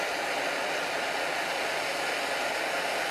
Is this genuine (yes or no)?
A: yes